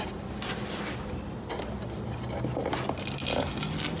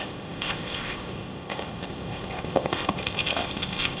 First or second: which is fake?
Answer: second